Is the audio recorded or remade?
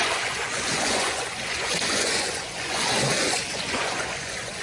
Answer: remade